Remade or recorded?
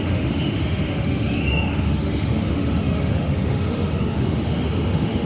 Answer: remade